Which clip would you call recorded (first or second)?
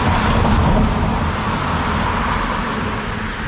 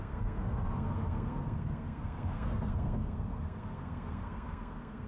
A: first